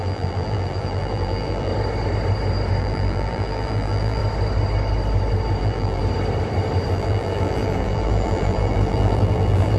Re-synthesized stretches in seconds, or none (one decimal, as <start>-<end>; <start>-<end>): 0.0-1.7; 2.8-4.2; 5.6-6.0; 6.9-9.8